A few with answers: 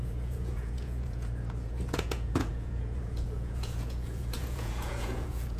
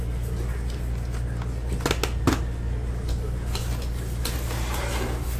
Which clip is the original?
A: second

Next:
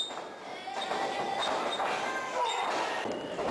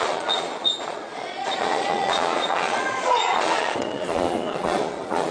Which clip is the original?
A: first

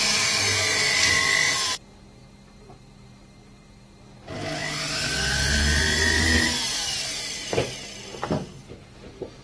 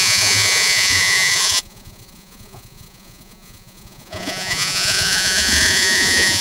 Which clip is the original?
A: first